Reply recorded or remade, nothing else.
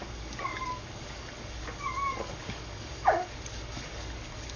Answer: remade